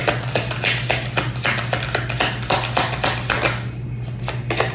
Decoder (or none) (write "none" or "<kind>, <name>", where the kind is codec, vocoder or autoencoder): none